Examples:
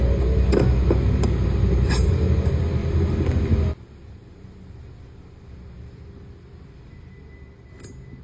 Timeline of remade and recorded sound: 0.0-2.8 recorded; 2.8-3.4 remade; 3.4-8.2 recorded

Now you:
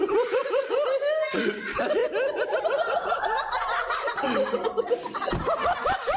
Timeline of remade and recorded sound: 0.0-2.0 remade; 2.0-2.6 recorded; 2.6-6.2 remade

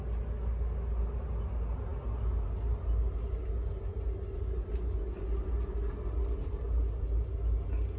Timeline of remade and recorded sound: 0.0-8.0 recorded

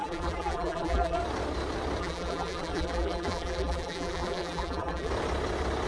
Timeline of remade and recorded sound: 0.0-1.2 remade; 1.2-2.0 recorded; 2.0-5.1 remade; 5.1-5.9 recorded

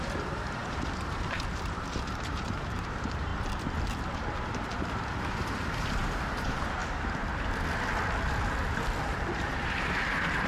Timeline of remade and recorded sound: 0.0-3.3 remade; 3.3-5.4 recorded; 5.4-6.8 remade; 6.8-9.0 recorded; 9.0-10.5 remade

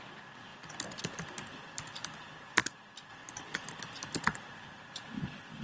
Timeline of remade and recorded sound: 0.0-0.5 remade; 0.5-1.0 recorded; 1.0-2.6 remade; 2.6-3.1 recorded; 3.1-5.6 remade

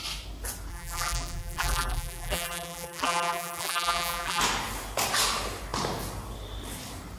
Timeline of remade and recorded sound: 0.0-0.7 recorded; 0.7-4.4 remade; 4.4-7.2 recorded